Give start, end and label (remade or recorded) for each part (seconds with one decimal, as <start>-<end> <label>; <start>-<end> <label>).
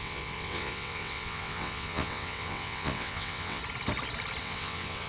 0.0-3.6 remade; 3.6-4.4 recorded; 4.4-5.1 remade